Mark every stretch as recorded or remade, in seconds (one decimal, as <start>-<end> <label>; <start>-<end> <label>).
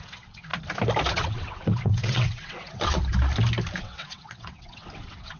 0.0-0.5 remade; 0.5-1.1 recorded; 1.1-3.0 remade; 3.0-3.8 recorded; 3.8-5.4 remade